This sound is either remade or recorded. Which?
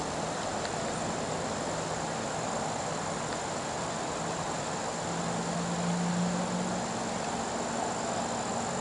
recorded